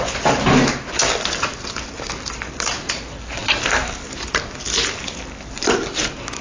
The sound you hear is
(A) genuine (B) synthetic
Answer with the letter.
A